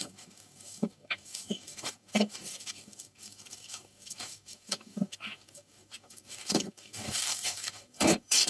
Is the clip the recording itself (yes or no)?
no